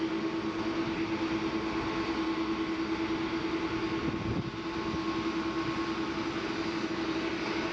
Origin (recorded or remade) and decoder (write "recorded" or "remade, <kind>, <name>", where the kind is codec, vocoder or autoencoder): recorded